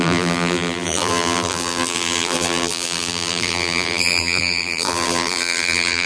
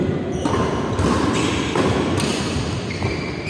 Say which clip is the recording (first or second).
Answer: second